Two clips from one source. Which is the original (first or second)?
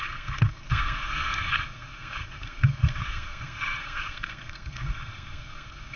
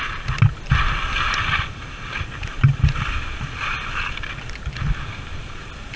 second